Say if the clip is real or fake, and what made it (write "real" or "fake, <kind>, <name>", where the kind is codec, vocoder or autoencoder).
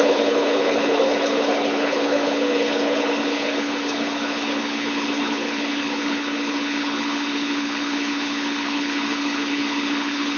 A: fake, codec, HILCodec